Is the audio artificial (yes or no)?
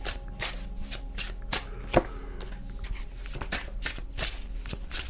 no